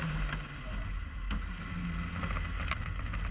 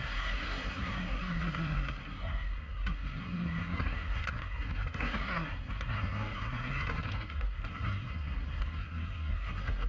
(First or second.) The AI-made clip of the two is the second